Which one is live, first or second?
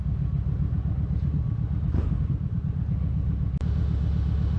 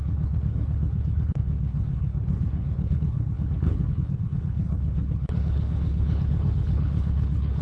first